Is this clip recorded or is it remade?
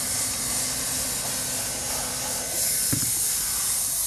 recorded